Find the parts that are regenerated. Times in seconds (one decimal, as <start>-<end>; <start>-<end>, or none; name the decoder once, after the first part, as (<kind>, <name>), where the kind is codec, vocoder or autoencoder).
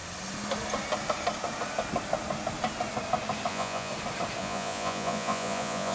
3.5-3.9 (vocoder, Vocos); 4.4-5.9